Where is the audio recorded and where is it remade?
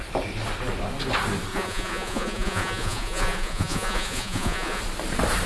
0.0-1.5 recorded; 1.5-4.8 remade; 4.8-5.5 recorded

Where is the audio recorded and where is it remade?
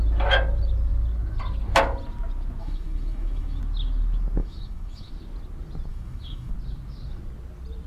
0.0-2.6 recorded; 2.6-3.6 remade; 3.6-4.4 recorded; 4.4-5.1 remade; 5.1-5.9 recorded; 5.9-6.5 remade; 6.5-7.9 recorded